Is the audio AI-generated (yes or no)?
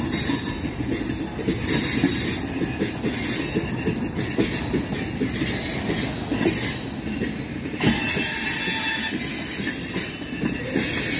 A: no